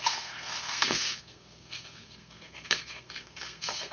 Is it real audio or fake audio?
fake